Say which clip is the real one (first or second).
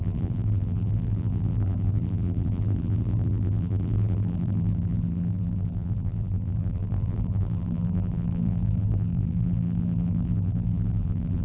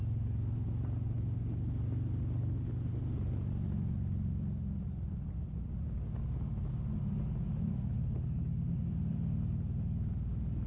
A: second